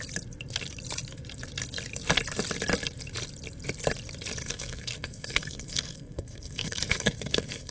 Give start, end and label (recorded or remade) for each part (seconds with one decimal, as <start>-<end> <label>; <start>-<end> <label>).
0.0-4.4 recorded; 4.4-7.7 remade